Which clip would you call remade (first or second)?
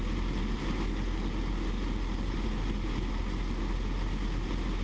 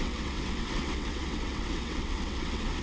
second